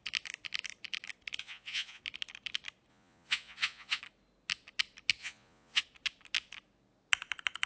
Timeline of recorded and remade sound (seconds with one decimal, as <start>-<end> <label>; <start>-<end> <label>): 0.0-1.4 recorded; 1.4-2.0 remade; 2.0-2.9 recorded; 2.9-4.0 remade; 4.0-5.2 recorded; 5.2-5.8 remade; 5.8-7.7 recorded